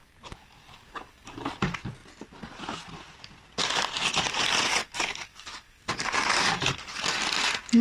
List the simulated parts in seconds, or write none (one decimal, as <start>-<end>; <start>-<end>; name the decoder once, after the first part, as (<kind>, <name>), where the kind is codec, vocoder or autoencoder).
0.0-1.5 (codec, DAC); 4.8-6.6